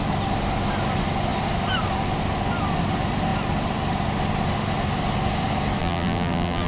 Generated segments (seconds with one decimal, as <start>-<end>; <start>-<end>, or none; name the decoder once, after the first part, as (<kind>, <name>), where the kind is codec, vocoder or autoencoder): 5.8-6.7 (vocoder, BigVGAN v2)